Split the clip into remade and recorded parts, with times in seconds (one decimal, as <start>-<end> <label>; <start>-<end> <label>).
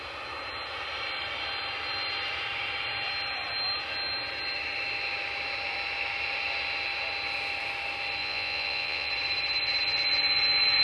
0.0-8.2 recorded; 8.2-9.1 remade; 9.1-10.8 recorded